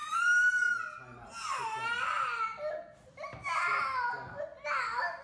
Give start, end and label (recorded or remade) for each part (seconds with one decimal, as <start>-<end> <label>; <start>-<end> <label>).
0.0-5.2 recorded